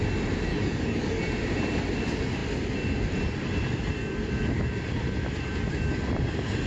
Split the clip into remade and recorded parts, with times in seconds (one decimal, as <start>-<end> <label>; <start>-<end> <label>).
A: 0.0-0.5 recorded; 0.5-1.2 remade; 1.2-6.7 recorded